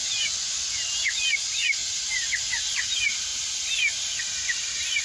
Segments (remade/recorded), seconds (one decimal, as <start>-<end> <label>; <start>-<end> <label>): 0.0-5.0 recorded